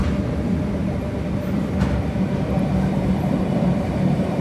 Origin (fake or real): fake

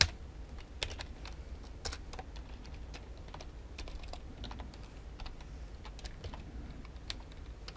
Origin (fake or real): real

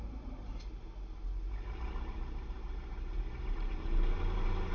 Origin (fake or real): fake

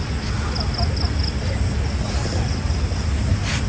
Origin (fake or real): real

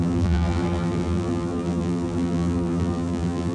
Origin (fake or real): fake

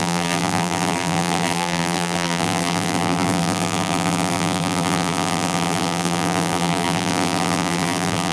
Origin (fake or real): fake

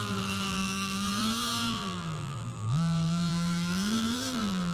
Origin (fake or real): fake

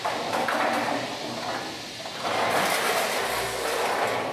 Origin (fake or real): real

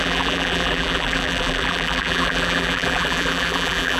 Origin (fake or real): fake